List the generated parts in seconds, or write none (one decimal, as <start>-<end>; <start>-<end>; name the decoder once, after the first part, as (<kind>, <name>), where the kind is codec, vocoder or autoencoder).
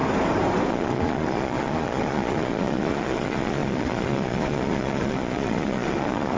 0.7-6.4 (vocoder, Vocos)